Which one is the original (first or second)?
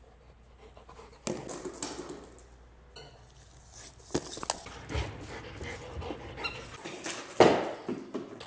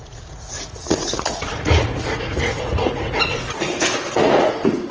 first